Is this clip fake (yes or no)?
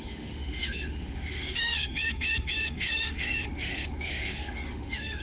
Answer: yes